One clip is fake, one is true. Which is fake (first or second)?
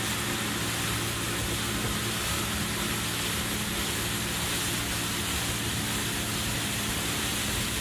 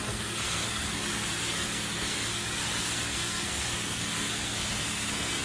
second